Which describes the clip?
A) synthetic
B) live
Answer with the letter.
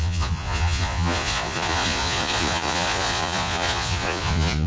A